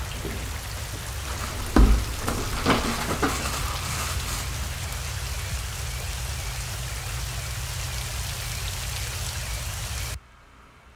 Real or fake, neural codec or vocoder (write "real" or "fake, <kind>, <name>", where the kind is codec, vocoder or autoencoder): real